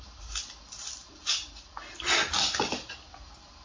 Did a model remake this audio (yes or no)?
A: no